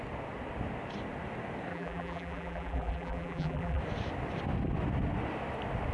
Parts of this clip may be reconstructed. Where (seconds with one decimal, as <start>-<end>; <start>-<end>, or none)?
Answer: 1.7-3.8